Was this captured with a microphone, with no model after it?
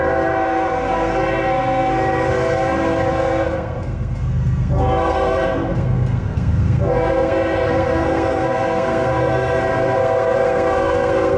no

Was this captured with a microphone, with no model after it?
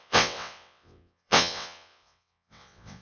no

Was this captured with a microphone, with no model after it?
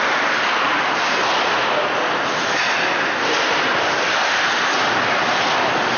yes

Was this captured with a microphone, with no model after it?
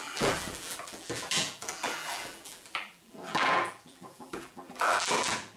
no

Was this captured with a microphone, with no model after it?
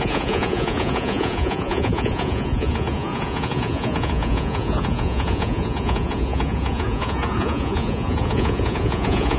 no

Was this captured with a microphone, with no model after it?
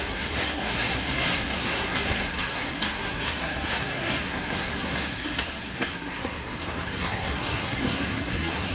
no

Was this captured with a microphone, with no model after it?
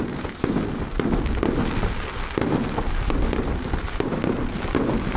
yes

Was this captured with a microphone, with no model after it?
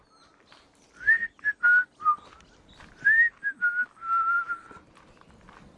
yes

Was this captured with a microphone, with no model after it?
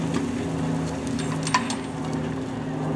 yes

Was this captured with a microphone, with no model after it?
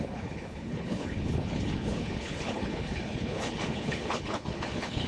no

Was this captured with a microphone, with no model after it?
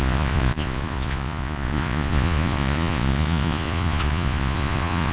no